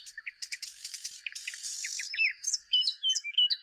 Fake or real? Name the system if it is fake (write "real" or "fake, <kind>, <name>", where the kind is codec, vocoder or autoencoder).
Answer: fake, autoencoder, DAC-VAE